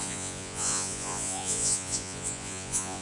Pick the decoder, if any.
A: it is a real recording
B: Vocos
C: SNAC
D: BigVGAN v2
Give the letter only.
B